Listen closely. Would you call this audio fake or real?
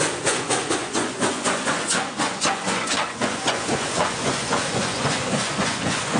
fake